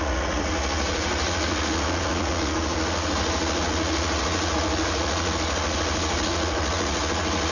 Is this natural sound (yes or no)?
no